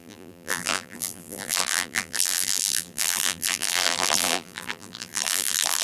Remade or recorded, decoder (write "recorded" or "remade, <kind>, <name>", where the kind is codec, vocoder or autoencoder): remade, vocoder, BigVGAN v2